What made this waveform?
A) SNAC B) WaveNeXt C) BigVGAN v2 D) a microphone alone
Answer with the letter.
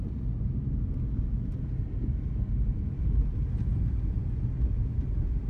D